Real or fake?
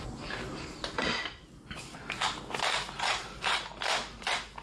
real